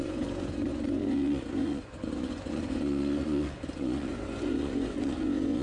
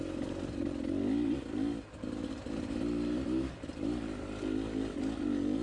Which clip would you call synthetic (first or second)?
first